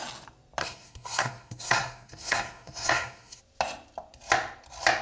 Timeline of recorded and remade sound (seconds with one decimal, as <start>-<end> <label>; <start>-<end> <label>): 0.0-0.6 recorded; 0.6-3.4 remade; 3.4-5.0 recorded